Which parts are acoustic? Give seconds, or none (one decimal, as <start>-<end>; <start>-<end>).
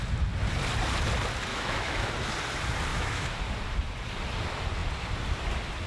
0.0-1.5; 2.1-2.9; 3.4-5.9